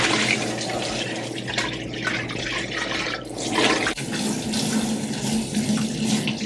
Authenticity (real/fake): real